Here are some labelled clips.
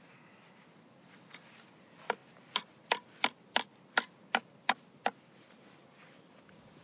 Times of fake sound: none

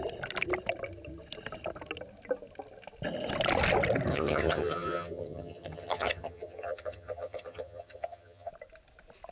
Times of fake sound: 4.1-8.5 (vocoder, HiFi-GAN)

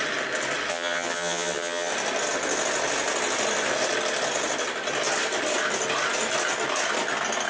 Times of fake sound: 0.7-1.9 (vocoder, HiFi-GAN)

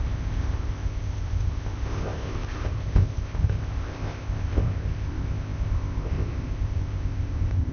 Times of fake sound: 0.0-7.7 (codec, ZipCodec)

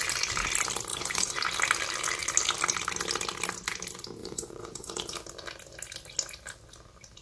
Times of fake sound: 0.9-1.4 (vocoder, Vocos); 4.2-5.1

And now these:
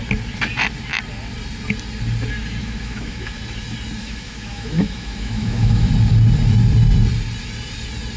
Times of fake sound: 2.6-3.4 (autoencoder, DAC-VAE); 4.0-5.9